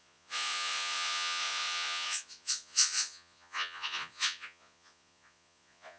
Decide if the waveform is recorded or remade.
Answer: remade